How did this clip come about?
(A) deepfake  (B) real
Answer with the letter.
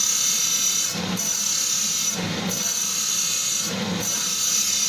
B